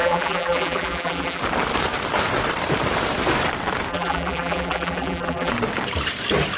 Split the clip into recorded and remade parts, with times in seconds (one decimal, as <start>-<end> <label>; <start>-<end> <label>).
0.0-1.4 remade; 1.4-3.9 recorded; 3.9-5.5 remade; 5.5-6.6 recorded